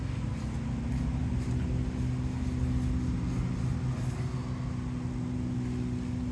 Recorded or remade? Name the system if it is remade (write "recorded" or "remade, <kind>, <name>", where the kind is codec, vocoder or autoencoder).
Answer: recorded